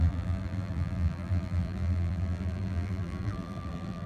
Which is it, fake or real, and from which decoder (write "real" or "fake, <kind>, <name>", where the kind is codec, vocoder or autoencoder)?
fake, vocoder, BigVGAN v2